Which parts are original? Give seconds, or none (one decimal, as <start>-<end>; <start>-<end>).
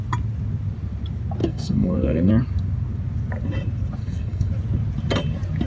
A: 0.0-1.4; 2.3-4.0; 4.5-5.7